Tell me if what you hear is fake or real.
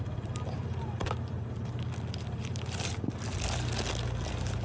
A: fake